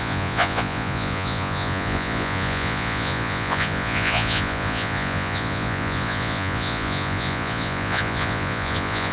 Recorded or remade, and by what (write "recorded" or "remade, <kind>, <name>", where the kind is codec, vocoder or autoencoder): remade, vocoder, Vocos